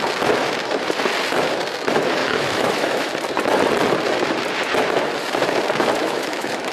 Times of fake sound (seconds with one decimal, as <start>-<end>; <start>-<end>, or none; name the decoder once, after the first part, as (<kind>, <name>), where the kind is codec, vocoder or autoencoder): 2.2-3.1 (autoencoder, DAC-VAE); 6.0-6.7